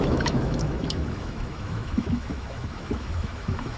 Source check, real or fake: fake